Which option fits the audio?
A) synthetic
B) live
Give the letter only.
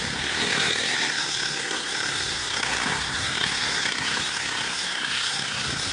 A